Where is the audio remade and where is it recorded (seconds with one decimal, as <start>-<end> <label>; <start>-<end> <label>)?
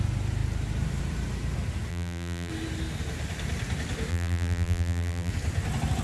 0.0-1.9 recorded; 1.9-2.5 remade; 2.5-4.1 recorded; 4.1-5.3 remade; 5.3-6.0 recorded